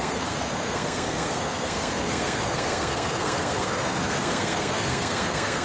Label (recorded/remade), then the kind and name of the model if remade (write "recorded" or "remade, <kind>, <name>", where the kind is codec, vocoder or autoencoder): remade, codec, SNAC